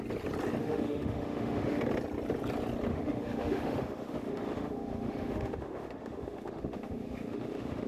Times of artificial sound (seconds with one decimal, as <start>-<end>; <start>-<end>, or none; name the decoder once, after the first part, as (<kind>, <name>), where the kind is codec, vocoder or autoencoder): 0.6-1.8 (autoencoder, DAC-VAE); 2.9-7.9